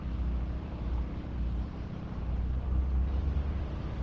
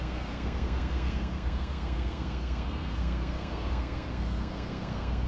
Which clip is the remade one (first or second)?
second